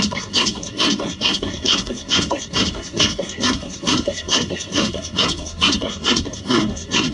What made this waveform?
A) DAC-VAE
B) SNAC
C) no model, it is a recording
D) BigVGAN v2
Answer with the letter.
B